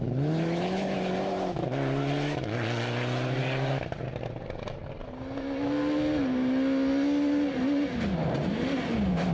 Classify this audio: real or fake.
real